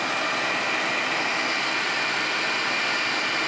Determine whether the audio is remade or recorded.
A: recorded